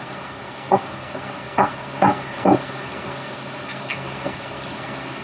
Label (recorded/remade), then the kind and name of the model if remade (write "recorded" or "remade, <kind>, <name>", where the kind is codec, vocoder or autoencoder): remade, codec, SNAC